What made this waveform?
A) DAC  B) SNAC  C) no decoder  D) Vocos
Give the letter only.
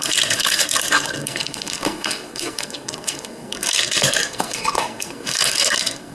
B